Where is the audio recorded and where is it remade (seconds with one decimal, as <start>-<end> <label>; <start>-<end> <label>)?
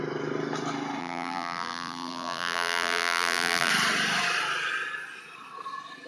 0.0-1.0 recorded; 1.0-3.7 remade; 3.7-6.1 recorded